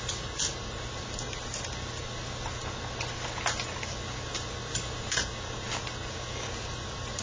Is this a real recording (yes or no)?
yes